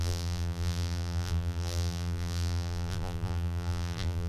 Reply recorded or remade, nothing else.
remade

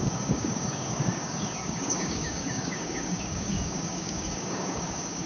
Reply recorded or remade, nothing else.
remade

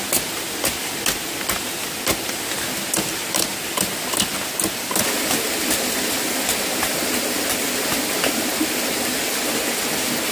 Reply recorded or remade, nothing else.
recorded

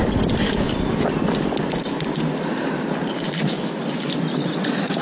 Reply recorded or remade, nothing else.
recorded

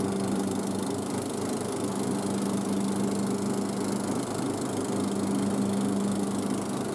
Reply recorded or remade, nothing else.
recorded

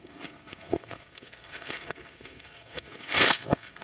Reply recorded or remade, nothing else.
remade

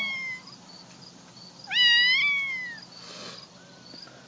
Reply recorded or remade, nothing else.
recorded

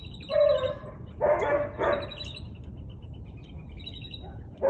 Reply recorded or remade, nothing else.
recorded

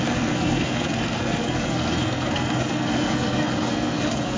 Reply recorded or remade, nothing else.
remade